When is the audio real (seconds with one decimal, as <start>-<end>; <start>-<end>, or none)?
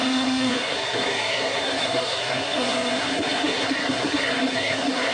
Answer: none